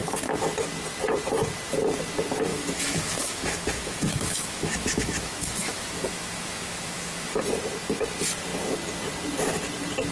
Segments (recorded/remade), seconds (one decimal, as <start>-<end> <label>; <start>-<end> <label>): 0.0-2.5 recorded; 2.5-7.4 remade; 7.4-10.1 recorded